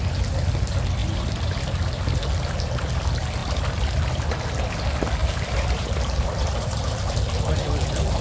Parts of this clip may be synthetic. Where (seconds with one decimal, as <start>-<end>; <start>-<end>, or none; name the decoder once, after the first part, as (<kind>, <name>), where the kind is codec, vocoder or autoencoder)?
1.0-1.6 (vocoder, BigVGAN v2); 5.2-6.9